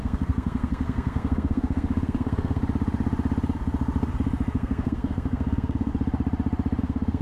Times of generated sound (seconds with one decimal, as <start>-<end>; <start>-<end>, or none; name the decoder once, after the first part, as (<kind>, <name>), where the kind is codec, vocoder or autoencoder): 0.0-2.6 (codec, SNAC); 4.5-5.9; 6.8-7.2